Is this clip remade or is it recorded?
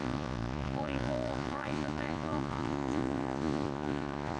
remade